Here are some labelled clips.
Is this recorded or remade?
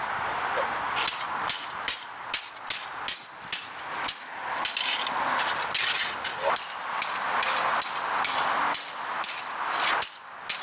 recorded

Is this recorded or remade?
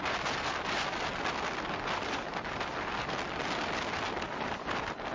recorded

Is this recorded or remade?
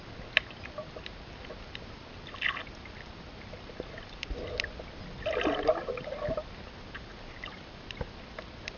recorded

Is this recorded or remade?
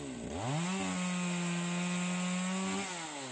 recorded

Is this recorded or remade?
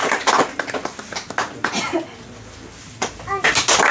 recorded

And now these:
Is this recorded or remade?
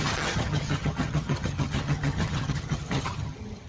remade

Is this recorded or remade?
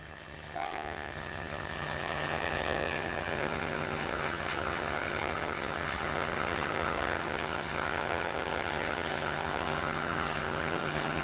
remade